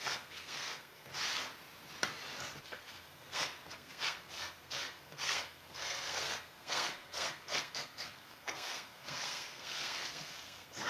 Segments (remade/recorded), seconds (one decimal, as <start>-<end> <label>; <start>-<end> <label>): 0.0-1.1 remade; 1.1-2.6 recorded; 2.6-10.9 remade